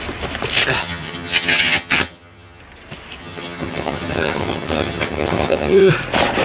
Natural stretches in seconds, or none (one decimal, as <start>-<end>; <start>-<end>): 0.0-0.8; 2.6-3.2; 5.9-6.4